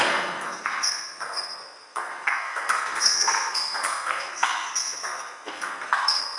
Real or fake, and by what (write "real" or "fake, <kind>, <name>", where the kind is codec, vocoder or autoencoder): fake, codec, SNAC